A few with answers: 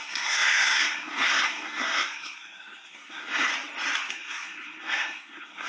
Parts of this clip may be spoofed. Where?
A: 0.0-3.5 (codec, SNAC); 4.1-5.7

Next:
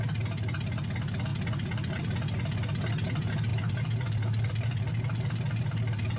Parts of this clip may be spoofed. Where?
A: 1.3-2.0 (vocoder, BigVGAN v2); 3.5-4.9

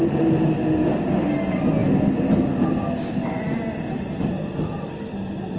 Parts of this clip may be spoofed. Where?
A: none

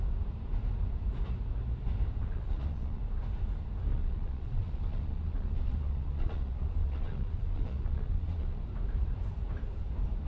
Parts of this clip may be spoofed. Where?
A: 2.2-3.0 (vocoder, Vocos); 3.9-8.6

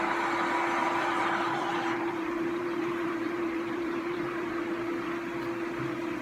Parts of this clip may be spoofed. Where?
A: 0.8-4.5 (vocoder, BigVGAN v2)

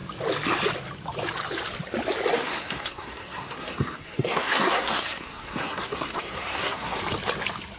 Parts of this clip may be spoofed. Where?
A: 2.3-7.0 (codec, SNAC)

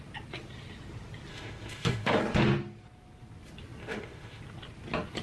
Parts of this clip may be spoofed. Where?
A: 1.3-2.2 (autoencoder, DAC-VAE); 3.8-4.4

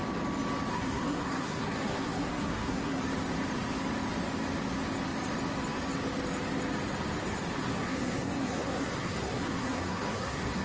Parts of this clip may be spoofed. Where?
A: 0.7-3.0 (codec, SNAC); 7.6-10.6